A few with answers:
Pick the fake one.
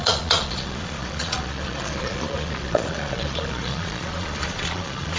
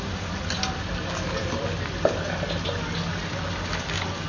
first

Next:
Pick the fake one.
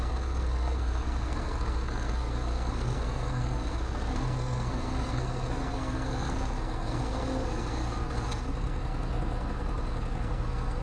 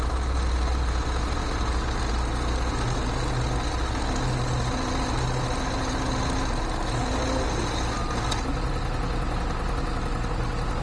first